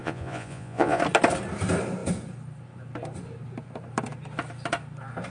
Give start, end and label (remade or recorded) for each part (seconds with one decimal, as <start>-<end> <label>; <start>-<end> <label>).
0.0-1.0 remade; 1.0-5.3 recorded